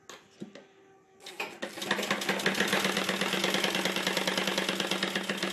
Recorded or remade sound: recorded